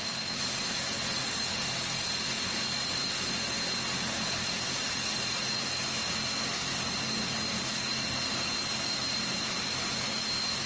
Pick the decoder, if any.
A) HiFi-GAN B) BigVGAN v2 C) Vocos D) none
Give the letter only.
D